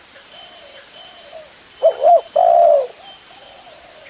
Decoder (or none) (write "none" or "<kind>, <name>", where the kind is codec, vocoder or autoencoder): vocoder, BigVGAN v2